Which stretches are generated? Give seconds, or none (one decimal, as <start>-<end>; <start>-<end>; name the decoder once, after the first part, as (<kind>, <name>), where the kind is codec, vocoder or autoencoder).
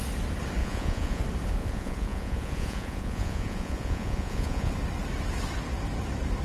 0.6-1.2 (vocoder, Vocos); 1.6-4.7